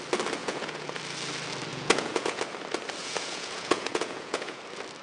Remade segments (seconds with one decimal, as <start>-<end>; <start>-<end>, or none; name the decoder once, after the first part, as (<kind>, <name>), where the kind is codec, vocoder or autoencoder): 0.4-1.0 (vocoder, Vocos); 1.7-2.4; 3.0-4.6